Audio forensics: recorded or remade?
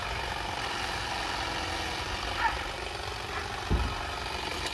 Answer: recorded